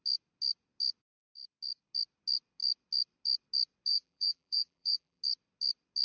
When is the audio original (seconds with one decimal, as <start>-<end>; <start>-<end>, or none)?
0.0-3.9; 5.2-6.0